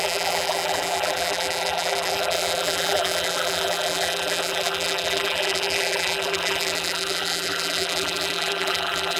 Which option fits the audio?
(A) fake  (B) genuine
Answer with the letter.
A